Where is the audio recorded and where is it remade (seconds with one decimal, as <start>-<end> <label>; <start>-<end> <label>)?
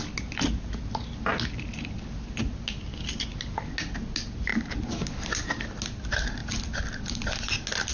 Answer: 0.0-4.5 recorded; 4.5-5.0 remade; 5.0-7.9 recorded